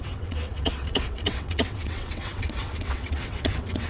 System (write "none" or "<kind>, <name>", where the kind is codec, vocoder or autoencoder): vocoder, WaveNeXt